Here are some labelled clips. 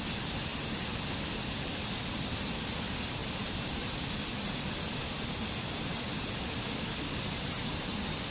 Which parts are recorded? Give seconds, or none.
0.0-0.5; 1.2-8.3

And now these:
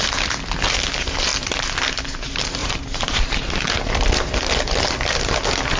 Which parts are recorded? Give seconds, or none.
0.0-2.6; 4.6-5.8

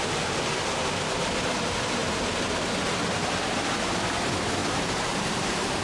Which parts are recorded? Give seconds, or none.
0.0-2.0; 2.5-4.6

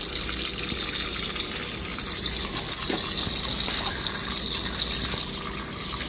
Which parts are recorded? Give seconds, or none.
0.0-6.1

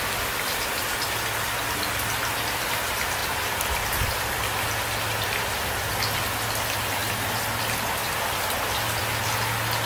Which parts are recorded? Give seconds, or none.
0.0-3.2; 4.4-9.9